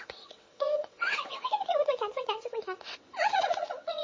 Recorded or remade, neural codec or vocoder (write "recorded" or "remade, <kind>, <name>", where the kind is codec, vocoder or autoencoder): remade, vocoder, WaveNeXt